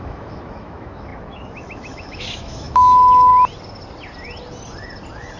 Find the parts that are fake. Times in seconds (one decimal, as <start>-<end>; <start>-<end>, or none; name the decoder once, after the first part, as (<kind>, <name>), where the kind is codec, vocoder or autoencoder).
0.0-3.3 (autoencoder, DAC-VAE)